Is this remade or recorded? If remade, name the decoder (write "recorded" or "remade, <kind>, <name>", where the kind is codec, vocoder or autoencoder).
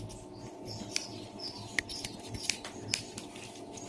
recorded